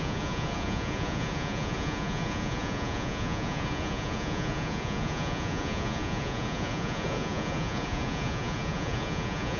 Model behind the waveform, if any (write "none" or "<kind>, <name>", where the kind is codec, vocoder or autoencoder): vocoder, Vocos